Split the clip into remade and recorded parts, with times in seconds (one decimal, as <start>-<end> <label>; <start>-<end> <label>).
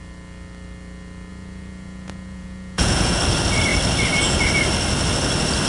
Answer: 0.0-1.3 recorded; 1.3-3.2 remade; 3.2-5.7 recorded